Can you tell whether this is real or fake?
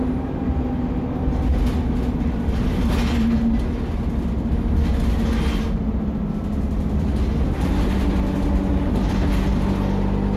real